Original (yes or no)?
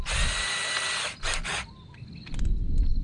yes